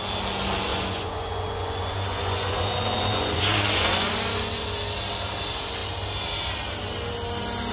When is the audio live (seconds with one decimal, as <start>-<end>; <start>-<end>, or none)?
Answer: 0.0-0.7; 4.1-7.7